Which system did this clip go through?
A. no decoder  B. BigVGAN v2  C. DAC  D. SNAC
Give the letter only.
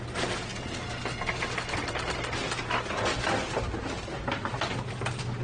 A